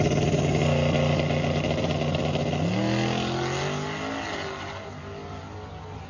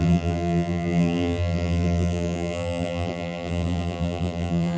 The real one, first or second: first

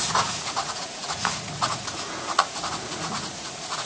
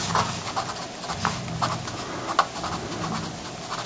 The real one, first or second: second